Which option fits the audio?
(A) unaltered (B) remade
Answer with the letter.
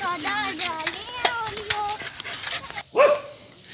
A